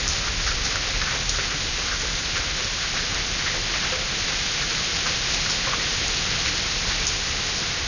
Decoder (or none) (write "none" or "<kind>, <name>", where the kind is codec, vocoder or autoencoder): none